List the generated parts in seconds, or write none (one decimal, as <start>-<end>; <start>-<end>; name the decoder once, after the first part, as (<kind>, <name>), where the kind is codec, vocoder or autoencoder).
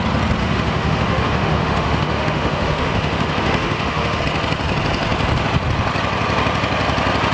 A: 0.4-4.2 (autoencoder, DAC-VAE)